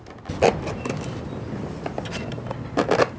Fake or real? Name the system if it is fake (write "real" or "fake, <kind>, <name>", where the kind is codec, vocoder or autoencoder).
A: real